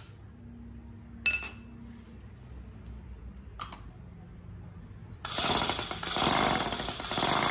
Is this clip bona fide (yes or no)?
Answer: yes